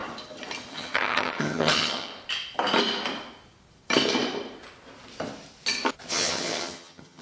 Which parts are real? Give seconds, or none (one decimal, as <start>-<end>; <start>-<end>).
0.0-0.7; 2.1-6.1